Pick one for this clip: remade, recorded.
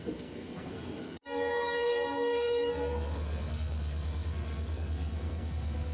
remade